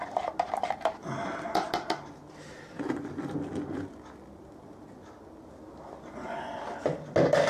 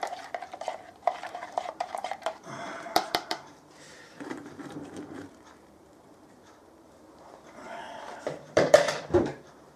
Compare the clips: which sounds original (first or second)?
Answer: first